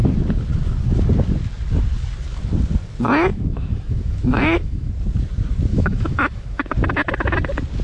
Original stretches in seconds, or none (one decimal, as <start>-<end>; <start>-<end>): 0.0-3.3; 4.9-5.7; 6.7-7.8